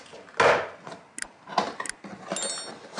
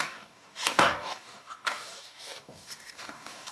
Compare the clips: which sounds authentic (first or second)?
first